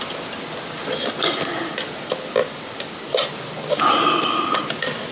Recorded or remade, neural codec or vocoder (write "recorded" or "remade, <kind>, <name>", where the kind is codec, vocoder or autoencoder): recorded